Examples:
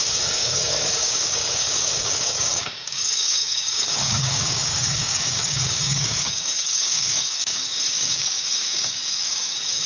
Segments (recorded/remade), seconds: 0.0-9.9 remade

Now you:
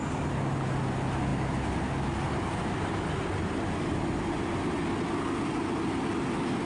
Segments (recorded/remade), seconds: 0.0-6.7 recorded

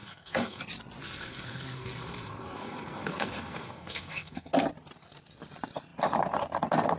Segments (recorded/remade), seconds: 0.0-0.6 remade; 0.6-1.0 recorded; 1.0-4.5 remade; 4.5-7.0 recorded

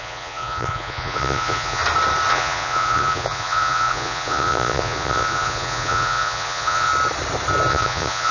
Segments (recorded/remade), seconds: 0.0-1.8 remade; 1.8-2.3 recorded; 2.3-6.9 remade; 6.9-7.7 recorded; 7.7-8.3 remade